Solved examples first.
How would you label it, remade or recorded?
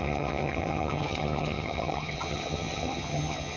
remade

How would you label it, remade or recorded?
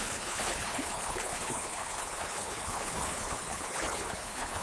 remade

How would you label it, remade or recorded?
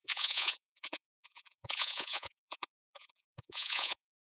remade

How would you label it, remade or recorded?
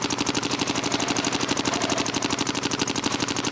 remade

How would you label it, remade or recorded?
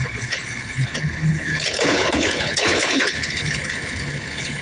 remade